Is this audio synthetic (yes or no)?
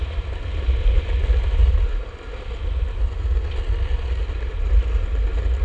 no